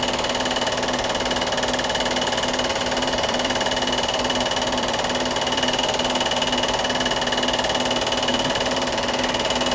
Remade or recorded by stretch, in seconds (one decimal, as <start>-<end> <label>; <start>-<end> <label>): 0.0-2.7 recorded; 2.7-5.8 remade; 5.8-8.3 recorded; 8.3-9.2 remade; 9.2-9.7 recorded